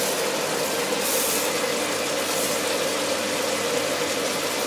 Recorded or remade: recorded